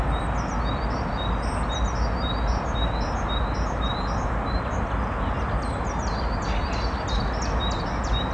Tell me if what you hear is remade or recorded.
recorded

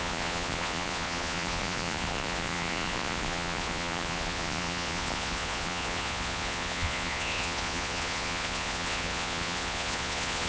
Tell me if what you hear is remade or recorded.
remade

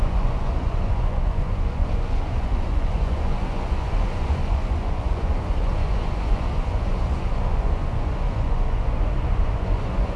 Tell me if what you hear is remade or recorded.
remade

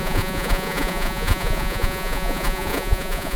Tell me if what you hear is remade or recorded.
remade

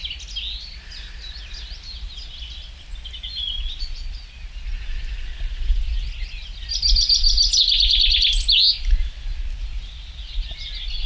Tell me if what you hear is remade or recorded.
recorded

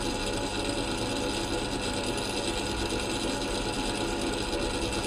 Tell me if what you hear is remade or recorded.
recorded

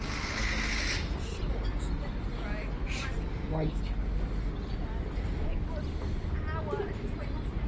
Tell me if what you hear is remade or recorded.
recorded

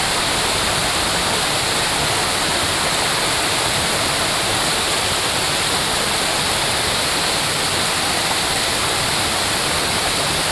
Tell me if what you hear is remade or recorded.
recorded